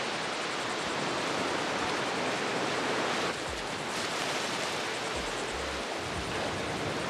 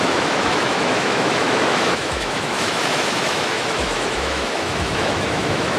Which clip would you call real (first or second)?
first